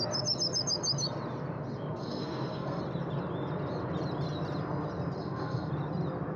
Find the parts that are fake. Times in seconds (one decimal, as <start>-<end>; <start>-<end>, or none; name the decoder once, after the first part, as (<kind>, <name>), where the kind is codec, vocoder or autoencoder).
2.0-2.8 (codec, SNAC); 5.2-5.7